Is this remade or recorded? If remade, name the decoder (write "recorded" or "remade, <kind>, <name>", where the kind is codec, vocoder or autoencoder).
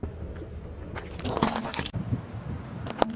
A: recorded